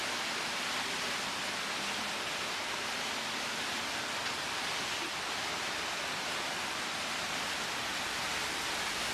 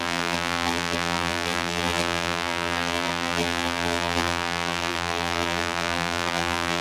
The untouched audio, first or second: first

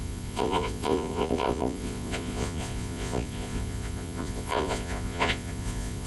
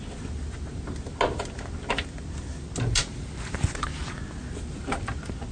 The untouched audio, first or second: second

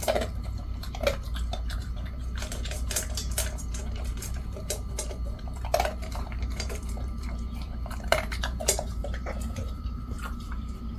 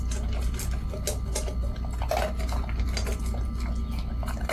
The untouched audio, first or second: second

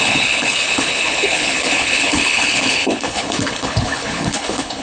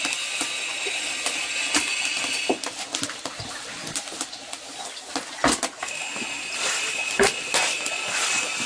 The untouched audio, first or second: second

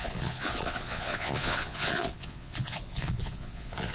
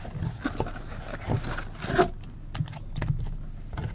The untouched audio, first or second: second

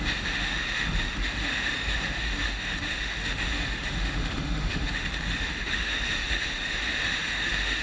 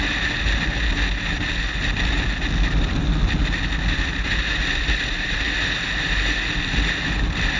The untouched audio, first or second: second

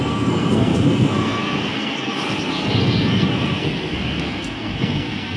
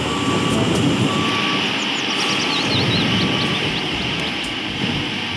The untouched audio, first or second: second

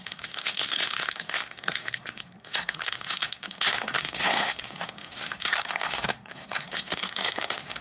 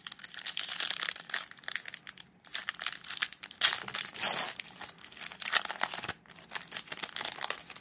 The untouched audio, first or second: second